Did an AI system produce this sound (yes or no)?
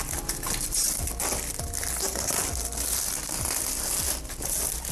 no